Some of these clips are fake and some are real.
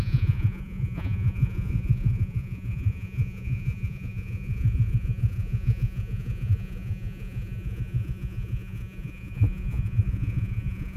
fake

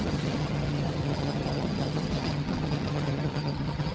fake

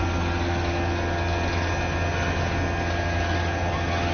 real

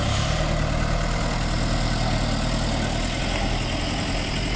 real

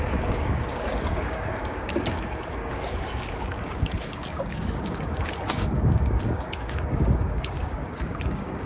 fake